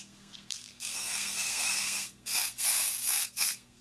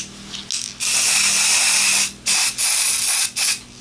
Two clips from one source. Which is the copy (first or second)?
first